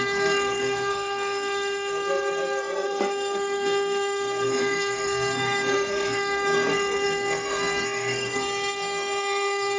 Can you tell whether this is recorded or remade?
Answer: remade